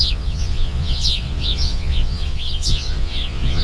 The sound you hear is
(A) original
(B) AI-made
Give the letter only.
B